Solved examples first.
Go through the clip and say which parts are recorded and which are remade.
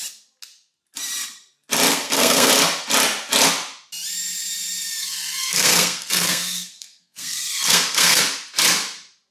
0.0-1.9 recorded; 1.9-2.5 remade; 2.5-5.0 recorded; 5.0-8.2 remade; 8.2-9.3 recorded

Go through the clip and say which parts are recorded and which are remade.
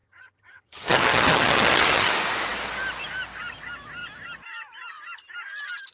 0.0-2.1 remade; 2.1-5.9 recorded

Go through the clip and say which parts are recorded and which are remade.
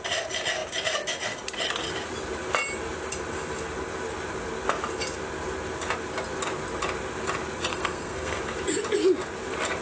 0.0-7.7 recorded; 7.7-8.4 remade; 8.4-9.8 recorded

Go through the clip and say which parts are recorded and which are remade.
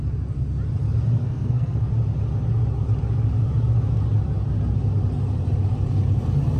0.0-1.2 recorded; 1.2-1.9 remade; 1.9-6.6 recorded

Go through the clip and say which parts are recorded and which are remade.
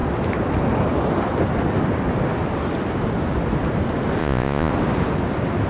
0.0-4.2 recorded; 4.2-4.7 remade; 4.7-5.7 recorded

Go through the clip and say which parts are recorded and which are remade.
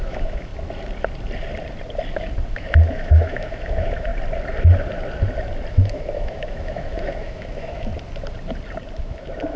0.0-0.5 remade; 0.5-2.5 recorded; 2.5-4.1 remade; 4.1-5.7 recorded; 5.7-7.9 remade; 7.9-9.0 recorded; 9.0-9.6 remade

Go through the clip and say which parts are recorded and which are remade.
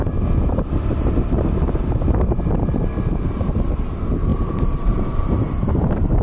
0.0-1.8 recorded; 1.8-2.4 remade; 2.4-4.3 recorded; 4.3-6.2 remade